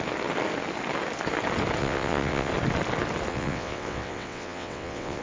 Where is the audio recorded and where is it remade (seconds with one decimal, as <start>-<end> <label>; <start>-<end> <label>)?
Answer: 0.0-1.8 recorded; 1.8-2.5 remade; 2.5-3.3 recorded; 3.3-5.2 remade